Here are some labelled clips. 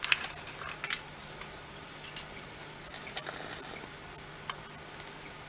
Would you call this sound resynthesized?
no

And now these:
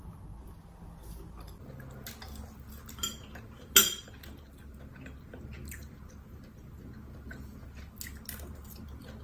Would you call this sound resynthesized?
no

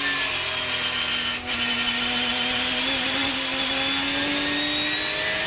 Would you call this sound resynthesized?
no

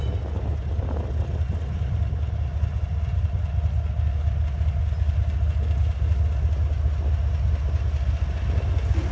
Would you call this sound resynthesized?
no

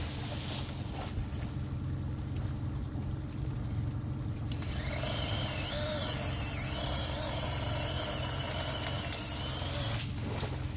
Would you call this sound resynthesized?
no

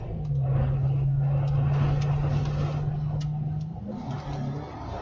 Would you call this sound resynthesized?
no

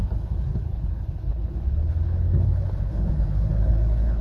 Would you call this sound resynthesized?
yes